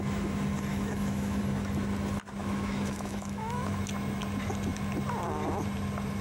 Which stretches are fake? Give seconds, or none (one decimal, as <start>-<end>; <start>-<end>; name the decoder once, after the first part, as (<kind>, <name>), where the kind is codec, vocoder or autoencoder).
0.7-1.4 (autoencoder, DAC-VAE); 2.4-3.8